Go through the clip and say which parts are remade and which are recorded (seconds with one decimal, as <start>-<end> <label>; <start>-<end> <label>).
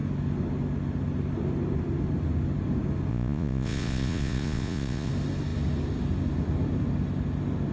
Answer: 0.0-3.1 recorded; 3.1-5.1 remade; 5.1-7.7 recorded